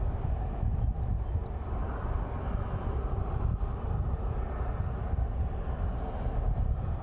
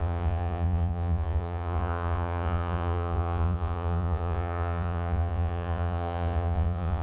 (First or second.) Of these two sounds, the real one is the first